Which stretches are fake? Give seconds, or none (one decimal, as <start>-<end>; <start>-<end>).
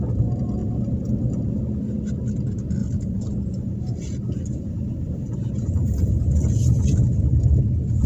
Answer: 0.6-1.6; 2.8-7.6